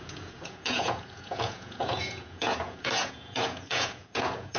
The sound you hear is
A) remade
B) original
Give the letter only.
A